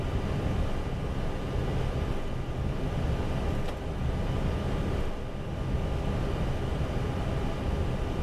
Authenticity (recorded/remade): recorded